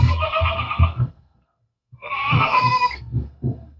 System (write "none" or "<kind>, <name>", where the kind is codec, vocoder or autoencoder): codec, SNAC